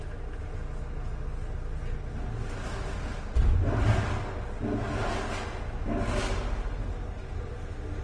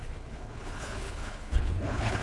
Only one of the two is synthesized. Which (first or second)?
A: second